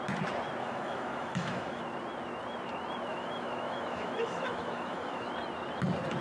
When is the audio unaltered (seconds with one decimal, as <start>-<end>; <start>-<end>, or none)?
0.0-0.6; 1.8-3.1; 5.3-6.2